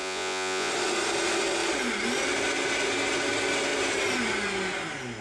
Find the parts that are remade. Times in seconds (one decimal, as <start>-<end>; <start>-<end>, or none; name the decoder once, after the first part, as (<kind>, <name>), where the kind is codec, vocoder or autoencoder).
0.0-0.7 (vocoder, Vocos)